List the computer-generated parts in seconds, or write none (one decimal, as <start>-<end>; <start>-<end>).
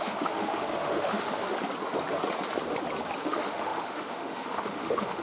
0.0-1.5; 3.2-5.2